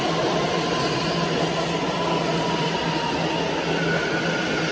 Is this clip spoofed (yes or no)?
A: no